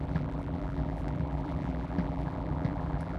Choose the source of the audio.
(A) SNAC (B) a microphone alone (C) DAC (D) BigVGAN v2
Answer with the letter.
D